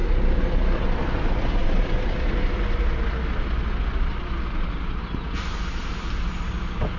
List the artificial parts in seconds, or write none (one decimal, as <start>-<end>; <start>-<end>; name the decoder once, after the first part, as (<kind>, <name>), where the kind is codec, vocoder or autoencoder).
none